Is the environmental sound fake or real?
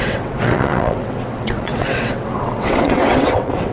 fake